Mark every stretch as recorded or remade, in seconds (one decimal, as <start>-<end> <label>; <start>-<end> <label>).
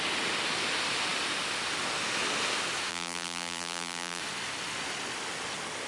0.0-2.9 recorded; 2.9-4.2 remade; 4.2-5.9 recorded